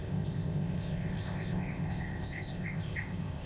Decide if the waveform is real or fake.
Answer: fake